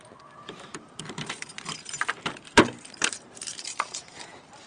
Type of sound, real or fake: fake